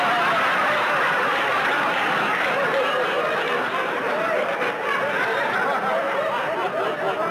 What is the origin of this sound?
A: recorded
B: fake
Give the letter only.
A